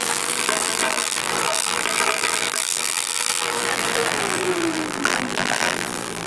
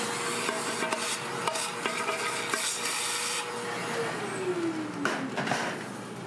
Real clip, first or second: second